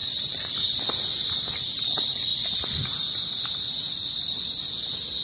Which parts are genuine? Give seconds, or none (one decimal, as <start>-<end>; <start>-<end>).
1.5-3.5; 4.5-5.2